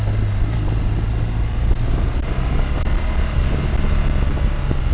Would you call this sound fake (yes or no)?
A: no